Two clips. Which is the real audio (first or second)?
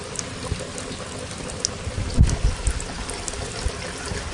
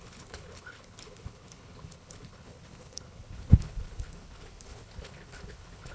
first